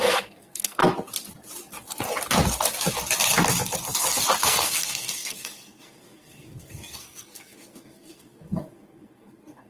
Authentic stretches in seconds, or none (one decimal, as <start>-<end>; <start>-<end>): 0.8-4.4